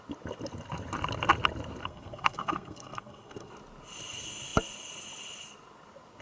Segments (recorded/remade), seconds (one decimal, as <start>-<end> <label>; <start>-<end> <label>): 0.0-1.8 recorded; 1.8-3.5 remade; 3.5-6.2 recorded